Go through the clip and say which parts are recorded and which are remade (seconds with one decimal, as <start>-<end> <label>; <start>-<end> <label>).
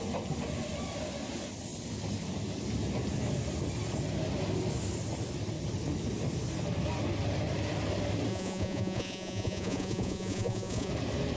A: 0.0-8.3 recorded; 8.3-10.9 remade; 10.9-11.4 recorded